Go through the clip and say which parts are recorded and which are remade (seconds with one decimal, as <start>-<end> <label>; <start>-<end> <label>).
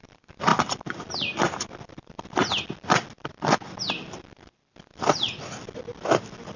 0.0-6.6 recorded